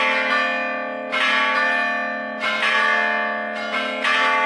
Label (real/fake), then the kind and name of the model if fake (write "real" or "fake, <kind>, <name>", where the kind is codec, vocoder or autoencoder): real